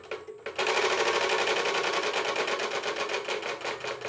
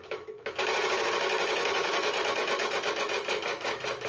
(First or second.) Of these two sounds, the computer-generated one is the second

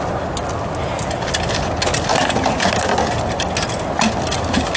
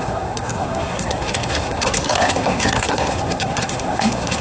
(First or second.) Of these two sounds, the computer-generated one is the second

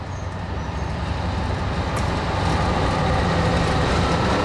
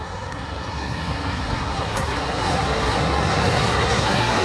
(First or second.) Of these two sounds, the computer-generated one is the second